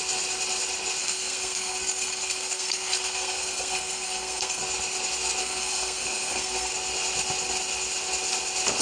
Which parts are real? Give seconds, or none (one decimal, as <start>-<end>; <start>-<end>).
0.0-1.0; 4.6-5.4; 6.7-8.8